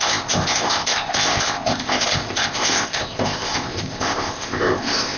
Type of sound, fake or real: fake